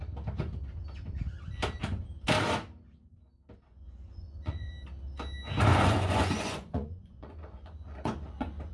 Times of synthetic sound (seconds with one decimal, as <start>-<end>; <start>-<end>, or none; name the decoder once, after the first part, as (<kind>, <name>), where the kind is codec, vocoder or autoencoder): 3.7-4.7 (vocoder, Vocos); 5.7-8.7

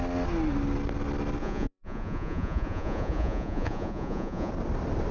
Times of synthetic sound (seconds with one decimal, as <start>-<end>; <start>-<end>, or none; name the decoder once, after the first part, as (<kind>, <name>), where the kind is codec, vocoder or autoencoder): 1.4-4.5 (vocoder, Vocos)

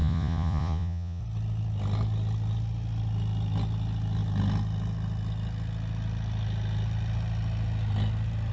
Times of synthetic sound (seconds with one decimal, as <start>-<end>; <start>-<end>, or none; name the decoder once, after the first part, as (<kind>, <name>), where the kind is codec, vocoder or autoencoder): 0.0-1.2 (vocoder, Vocos)

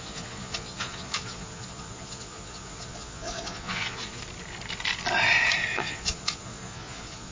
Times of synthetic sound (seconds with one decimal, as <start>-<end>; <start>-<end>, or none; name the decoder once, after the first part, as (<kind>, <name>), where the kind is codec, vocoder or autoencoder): 0.0-4.2 (vocoder, Vocos); 5.7-7.3

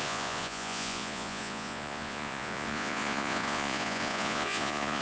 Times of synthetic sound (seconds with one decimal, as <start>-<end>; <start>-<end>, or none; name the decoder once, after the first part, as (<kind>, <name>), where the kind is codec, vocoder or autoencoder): 0.0-5.0 (vocoder, Vocos)